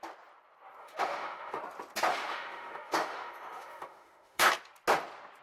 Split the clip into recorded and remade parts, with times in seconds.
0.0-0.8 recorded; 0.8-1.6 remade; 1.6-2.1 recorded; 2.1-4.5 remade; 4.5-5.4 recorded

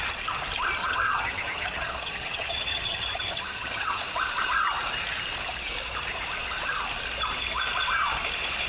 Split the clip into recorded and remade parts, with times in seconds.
0.0-0.8 recorded; 0.8-4.0 remade; 4.0-8.7 recorded

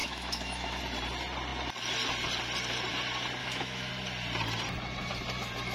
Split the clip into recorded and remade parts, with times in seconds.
0.0-0.8 remade; 0.8-3.4 recorded; 3.4-3.9 remade; 3.9-5.7 recorded